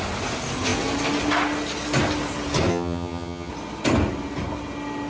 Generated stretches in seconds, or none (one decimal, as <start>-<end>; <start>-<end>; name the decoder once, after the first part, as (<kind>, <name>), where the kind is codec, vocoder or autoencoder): 2.7-3.5 (vocoder, HiFi-GAN)